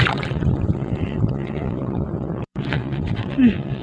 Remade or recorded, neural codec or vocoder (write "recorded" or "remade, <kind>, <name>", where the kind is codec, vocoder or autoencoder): remade, vocoder, WaveNeXt